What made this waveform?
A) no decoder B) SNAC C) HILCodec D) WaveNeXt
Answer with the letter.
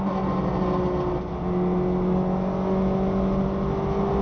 A